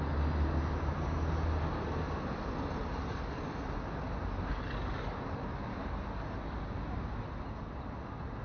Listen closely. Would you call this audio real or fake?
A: real